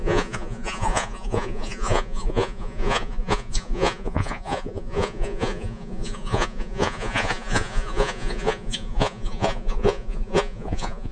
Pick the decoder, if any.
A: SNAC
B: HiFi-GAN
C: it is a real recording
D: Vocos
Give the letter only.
D